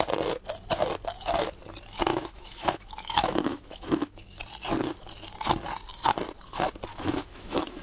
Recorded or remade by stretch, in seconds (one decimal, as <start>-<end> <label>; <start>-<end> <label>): 0.0-2.1 recorded; 2.1-4.4 remade; 4.4-6.9 recorded; 6.9-7.8 remade